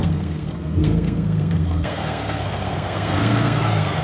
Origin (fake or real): fake